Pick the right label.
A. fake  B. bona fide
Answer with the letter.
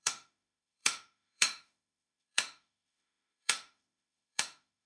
A